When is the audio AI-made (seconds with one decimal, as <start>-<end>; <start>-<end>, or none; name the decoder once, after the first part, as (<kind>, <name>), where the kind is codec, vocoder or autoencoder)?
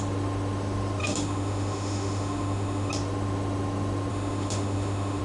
1.0-2.9 (autoencoder, DAC-VAE); 4.1-5.2